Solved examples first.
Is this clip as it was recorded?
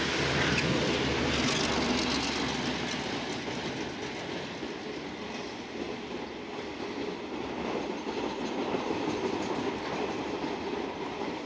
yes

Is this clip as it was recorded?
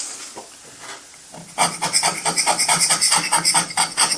yes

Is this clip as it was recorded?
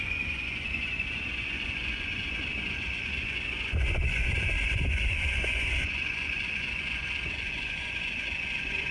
no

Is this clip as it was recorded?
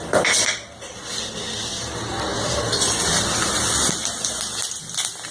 yes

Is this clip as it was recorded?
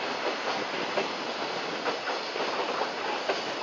yes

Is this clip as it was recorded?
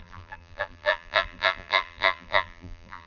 no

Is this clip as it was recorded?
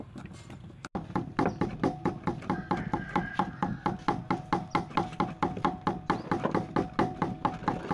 yes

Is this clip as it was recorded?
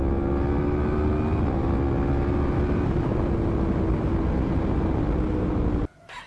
yes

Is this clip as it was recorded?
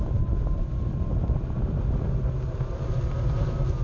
yes